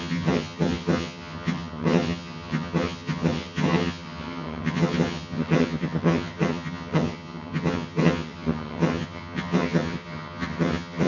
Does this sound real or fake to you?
fake